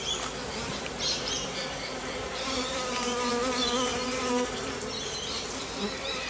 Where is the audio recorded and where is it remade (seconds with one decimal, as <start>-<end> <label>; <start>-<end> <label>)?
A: 0.0-0.6 recorded; 0.6-3.3 remade; 3.3-3.9 recorded; 3.9-4.7 remade; 4.7-6.3 recorded